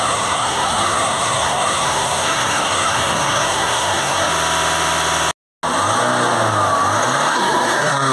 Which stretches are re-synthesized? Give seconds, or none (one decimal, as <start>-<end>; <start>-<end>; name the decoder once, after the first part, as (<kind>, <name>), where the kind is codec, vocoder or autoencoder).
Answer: 0.0-4.3 (codec, SNAC); 7.3-8.1